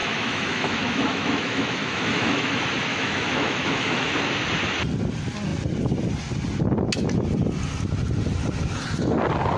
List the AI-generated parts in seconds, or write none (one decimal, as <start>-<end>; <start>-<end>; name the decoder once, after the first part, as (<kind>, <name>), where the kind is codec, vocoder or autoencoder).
0.0-2.5 (autoencoder, DAC-VAE); 2.9-4.2

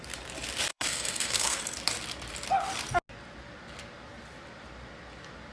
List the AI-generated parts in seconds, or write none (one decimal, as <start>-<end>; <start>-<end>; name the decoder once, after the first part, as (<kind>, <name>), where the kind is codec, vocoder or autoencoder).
0.7-1.6 (codec, SNAC)

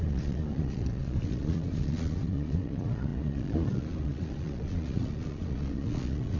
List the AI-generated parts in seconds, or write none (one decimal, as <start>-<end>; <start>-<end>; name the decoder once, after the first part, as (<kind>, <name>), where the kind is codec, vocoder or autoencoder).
0.0-6.4 (vocoder, Vocos)

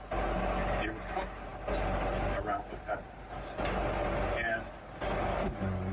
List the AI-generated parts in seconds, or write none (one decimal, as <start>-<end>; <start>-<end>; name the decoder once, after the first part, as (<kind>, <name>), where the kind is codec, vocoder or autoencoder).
none